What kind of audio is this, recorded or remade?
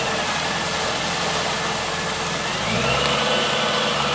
recorded